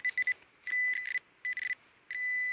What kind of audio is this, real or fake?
real